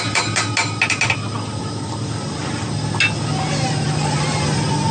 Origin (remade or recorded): recorded